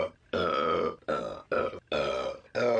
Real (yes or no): yes